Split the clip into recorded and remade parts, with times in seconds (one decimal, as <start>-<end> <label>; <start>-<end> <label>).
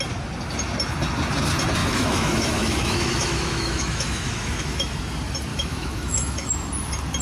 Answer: 0.0-1.8 recorded; 1.8-5.0 remade; 5.0-5.5 recorded; 5.5-6.5 remade; 6.5-7.2 recorded